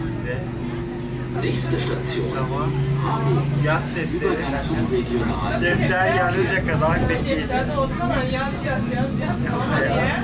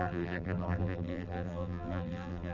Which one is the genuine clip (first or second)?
first